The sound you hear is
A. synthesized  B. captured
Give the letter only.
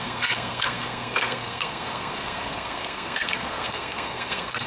A